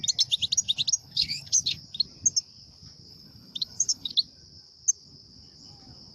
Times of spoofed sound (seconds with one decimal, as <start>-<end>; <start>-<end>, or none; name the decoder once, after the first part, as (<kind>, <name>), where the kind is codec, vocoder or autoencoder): 1.0-1.8 (codec, HILCodec); 3.1-4.1